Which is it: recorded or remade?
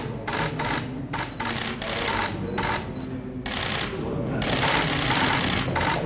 recorded